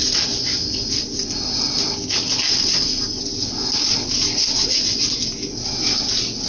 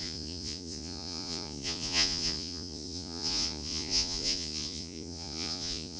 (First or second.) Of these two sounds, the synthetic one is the second